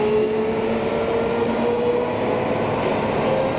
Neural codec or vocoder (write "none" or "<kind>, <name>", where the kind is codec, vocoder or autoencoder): none